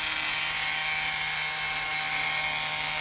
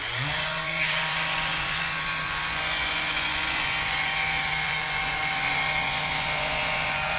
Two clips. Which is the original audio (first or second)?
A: first